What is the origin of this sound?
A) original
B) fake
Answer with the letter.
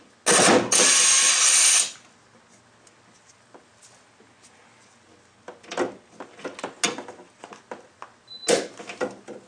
A